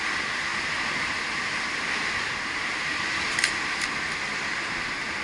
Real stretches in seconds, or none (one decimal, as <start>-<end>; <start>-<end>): 0.0-0.5; 3.6-5.2